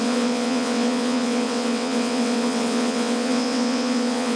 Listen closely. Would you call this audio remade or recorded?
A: remade